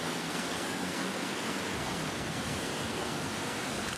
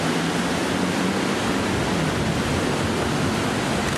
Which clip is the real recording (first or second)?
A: second